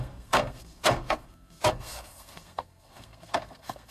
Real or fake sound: fake